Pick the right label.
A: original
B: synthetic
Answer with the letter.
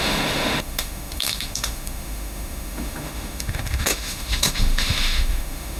B